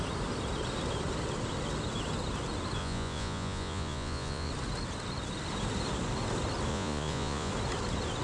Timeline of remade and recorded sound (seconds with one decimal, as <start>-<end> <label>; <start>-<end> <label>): 0.0-2.8 recorded; 2.8-4.5 remade; 4.5-6.7 recorded; 6.7-7.5 remade; 7.5-8.2 recorded